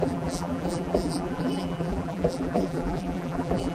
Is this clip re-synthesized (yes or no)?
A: yes